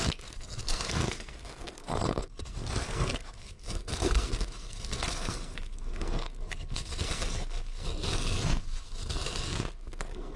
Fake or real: fake